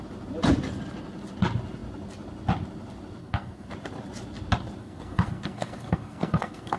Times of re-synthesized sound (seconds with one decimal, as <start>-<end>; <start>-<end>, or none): 3.2-3.7; 4.8-6.8